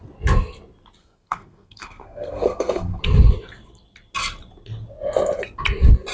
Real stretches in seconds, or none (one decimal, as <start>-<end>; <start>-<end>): 0.0-1.0; 3.0-6.1